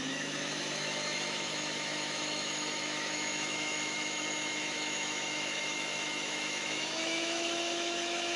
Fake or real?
fake